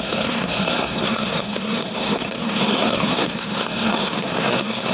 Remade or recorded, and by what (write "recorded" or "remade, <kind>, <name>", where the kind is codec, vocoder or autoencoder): remade, codec, SNAC